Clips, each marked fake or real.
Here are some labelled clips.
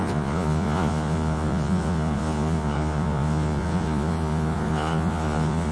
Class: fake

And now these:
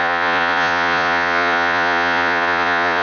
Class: fake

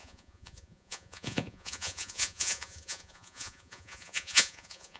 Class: fake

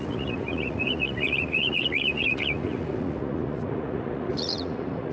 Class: fake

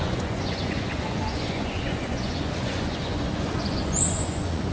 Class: fake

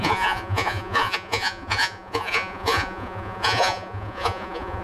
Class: fake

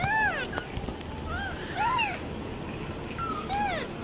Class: real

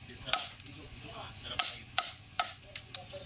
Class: fake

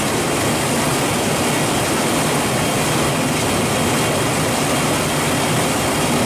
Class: real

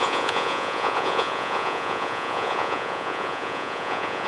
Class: fake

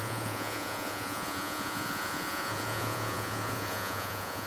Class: fake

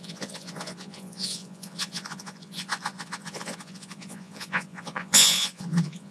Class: fake